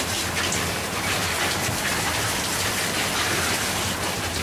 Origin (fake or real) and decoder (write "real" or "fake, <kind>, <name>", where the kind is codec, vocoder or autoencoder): real